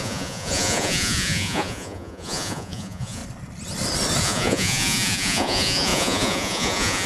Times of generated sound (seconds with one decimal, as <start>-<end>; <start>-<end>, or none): 0.0-3.2; 4.2-7.1